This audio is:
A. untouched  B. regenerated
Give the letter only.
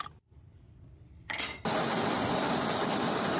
B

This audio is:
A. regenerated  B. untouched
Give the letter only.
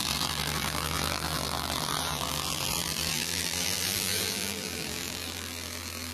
A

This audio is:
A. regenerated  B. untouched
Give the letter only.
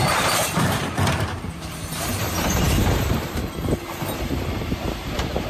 A